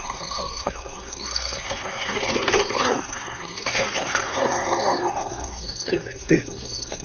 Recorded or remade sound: remade